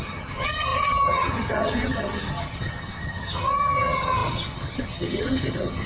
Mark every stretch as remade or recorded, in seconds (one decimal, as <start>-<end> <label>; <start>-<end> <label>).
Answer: 0.0-5.9 remade